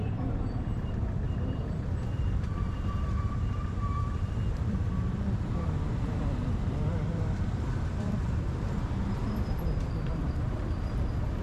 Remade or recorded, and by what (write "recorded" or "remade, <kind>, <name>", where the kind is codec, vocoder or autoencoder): remade, vocoder, BigVGAN v2